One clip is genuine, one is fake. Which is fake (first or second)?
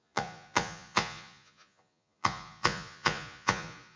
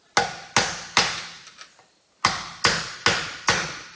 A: first